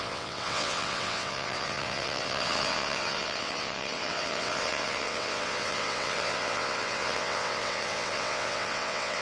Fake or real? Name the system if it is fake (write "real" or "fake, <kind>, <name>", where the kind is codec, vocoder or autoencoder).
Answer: fake, vocoder, WaveNeXt